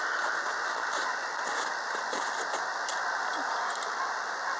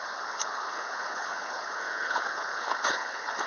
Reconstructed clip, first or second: second